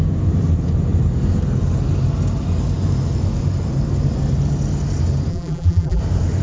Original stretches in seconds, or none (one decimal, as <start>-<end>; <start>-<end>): 0.0-5.3; 6.0-6.4